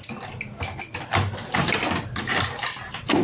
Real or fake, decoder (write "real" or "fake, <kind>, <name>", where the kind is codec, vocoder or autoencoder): real